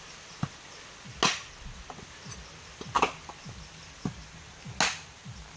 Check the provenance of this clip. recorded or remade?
recorded